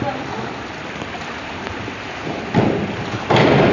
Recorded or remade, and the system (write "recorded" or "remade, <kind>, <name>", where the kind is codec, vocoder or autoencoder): recorded